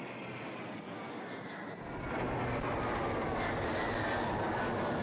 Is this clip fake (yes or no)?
no